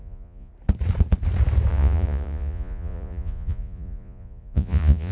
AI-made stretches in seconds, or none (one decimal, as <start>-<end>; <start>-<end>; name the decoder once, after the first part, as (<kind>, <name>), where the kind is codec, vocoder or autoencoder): 0.0-0.5 (vocoder, Vocos); 1.7-5.1

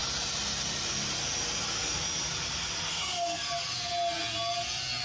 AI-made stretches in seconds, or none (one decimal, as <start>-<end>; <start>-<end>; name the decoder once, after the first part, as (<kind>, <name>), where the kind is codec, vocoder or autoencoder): 2.9-3.4 (codec, SNAC)